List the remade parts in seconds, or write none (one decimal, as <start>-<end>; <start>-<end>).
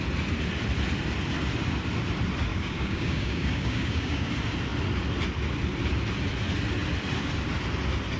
2.5-4.3